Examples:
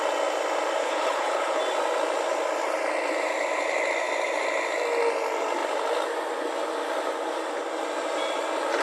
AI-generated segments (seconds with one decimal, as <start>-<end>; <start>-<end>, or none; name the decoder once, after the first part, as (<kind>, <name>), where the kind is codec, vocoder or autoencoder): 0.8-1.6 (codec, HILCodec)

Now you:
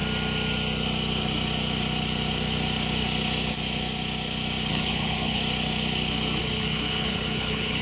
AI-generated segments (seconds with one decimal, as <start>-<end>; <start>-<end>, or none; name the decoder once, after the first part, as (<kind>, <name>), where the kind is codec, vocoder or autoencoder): 4.7-5.4 (codec, HILCodec); 6.4-7.8

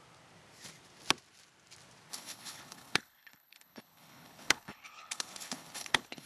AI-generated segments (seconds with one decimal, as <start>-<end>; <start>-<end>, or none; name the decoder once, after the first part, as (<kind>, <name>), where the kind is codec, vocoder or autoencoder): 2.1-6.3 (codec, HILCodec)

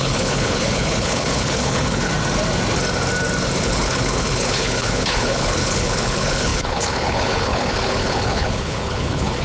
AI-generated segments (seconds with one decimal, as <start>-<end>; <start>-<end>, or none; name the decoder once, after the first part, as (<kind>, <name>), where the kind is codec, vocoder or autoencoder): 0.0-2.1 (codec, HILCodec); 3.6-9.4

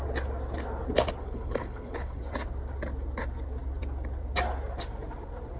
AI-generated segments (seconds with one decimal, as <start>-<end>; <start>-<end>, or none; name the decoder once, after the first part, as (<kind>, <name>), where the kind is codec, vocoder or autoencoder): 1.2-2.2 (codec, HILCodec)

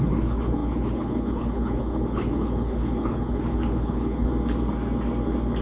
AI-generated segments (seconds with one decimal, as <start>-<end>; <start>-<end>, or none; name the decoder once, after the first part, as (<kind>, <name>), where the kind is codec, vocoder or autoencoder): 0.0-4.3 (codec, HILCodec)